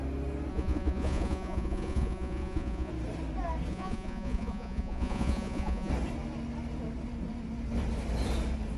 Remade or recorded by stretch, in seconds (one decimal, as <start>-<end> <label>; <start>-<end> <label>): 0.0-0.5 recorded; 0.5-2.9 remade; 2.9-3.7 recorded; 3.7-5.9 remade; 5.9-8.8 recorded